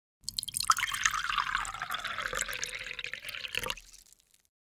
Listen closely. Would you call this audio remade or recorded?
recorded